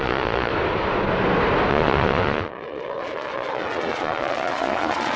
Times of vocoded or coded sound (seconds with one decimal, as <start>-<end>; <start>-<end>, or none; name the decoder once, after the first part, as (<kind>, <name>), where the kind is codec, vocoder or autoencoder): 0.0-0.5 (vocoder, Vocos); 1.7-5.2